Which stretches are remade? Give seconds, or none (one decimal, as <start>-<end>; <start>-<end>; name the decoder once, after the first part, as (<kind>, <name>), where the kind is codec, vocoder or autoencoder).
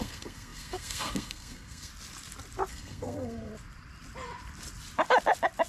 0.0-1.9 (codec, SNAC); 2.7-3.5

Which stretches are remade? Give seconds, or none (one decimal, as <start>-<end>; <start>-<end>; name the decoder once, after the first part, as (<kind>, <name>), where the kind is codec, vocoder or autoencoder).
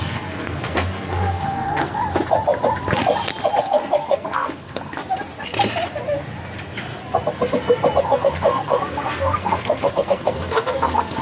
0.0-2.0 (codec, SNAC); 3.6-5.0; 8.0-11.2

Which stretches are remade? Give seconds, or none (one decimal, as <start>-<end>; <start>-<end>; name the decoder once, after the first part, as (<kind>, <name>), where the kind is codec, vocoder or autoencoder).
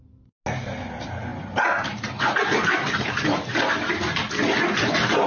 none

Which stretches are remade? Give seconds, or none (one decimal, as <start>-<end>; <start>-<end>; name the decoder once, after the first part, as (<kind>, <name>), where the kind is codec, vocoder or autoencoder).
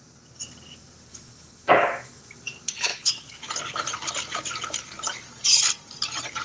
1.1-2.3 (autoencoder, DAC-VAE); 2.9-3.5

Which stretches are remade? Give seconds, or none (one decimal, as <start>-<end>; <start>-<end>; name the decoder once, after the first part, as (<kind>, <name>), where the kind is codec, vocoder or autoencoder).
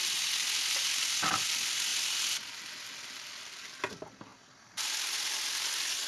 none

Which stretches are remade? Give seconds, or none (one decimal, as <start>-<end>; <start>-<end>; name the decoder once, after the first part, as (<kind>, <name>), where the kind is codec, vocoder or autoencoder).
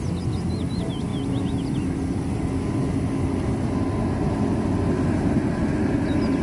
none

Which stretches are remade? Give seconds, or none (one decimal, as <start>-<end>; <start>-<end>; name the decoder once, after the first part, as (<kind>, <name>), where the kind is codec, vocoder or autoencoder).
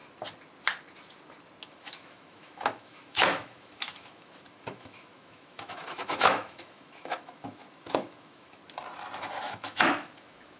1.7-8.6 (autoencoder, DAC-VAE); 9.4-10.6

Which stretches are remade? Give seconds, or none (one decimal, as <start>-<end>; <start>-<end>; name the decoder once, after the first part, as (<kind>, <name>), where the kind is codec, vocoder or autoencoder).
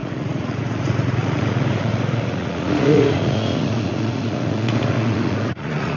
0.0-6.0 (vocoder, Vocos)